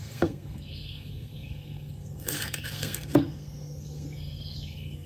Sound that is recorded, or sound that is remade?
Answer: remade